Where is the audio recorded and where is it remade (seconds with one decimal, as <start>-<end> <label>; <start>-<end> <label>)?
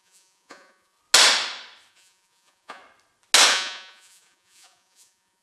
0.0-1.0 remade; 1.0-1.9 recorded; 1.9-2.8 remade; 2.8-3.5 recorded; 3.5-5.4 remade